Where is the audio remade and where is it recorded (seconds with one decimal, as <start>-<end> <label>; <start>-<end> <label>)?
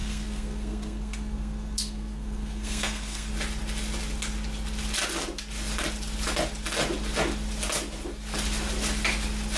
0.0-3.3 remade; 3.3-9.6 recorded